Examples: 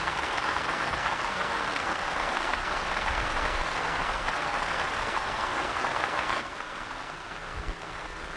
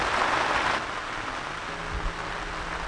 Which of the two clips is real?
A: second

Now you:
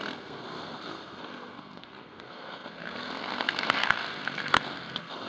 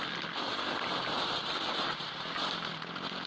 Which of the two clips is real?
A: second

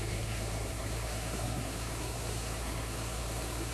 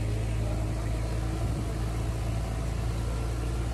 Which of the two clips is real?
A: second